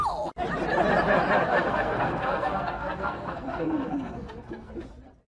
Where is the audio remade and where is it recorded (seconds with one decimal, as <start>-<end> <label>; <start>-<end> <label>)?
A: 0.0-1.5 recorded; 1.5-4.7 remade; 4.7-5.3 recorded